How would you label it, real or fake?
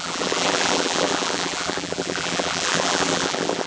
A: fake